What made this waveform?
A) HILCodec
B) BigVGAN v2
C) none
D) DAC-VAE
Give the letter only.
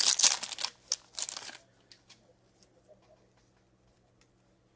C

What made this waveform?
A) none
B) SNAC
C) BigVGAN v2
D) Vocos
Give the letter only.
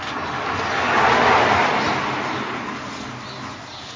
A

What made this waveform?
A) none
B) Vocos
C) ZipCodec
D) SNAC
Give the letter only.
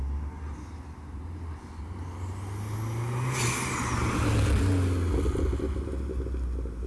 A